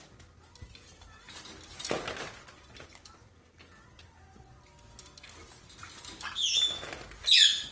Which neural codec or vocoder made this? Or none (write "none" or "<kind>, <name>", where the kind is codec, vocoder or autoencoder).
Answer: none